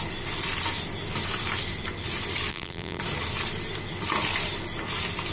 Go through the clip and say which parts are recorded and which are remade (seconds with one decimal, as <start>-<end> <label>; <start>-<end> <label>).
0.0-2.5 recorded; 2.5-3.0 remade; 3.0-5.3 recorded